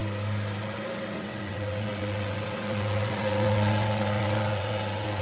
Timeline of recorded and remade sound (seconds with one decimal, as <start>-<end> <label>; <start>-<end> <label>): 0.0-0.6 recorded; 0.6-5.2 remade